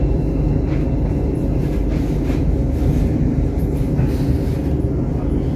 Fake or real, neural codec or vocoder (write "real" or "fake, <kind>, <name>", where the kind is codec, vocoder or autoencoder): real